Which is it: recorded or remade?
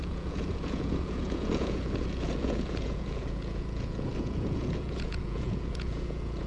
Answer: remade